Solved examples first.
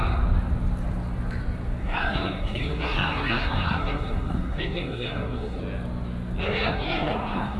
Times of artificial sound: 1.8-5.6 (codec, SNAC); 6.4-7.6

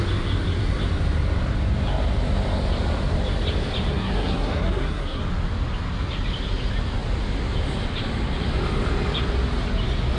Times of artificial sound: 3.9-5.2 (codec, SNAC)

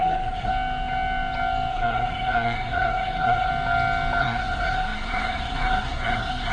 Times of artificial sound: 0.0-0.5 (codec, SNAC); 1.7-3.5; 4.2-6.5

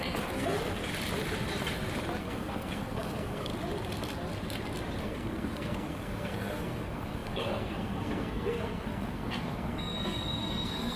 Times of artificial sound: 0.0-0.8 (codec, SNAC); 2.2-3.5; 5.0-11.0

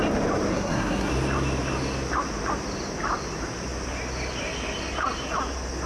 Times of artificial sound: 0.5-1.1 (codec, SNAC)

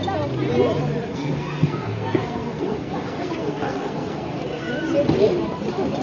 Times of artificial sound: 1.1-4.7 (codec, SNAC)